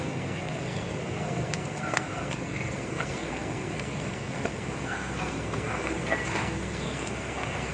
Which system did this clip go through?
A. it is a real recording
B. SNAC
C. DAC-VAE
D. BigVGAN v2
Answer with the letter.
B